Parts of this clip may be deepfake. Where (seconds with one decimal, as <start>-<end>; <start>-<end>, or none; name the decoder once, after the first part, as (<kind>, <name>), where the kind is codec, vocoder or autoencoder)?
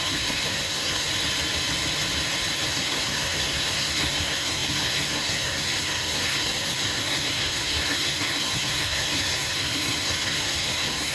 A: 0.0-1.1 (codec, SNAC); 2.7-11.1